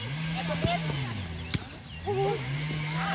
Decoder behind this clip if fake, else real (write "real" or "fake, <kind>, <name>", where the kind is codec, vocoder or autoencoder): real